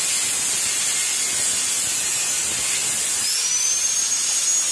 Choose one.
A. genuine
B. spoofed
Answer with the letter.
A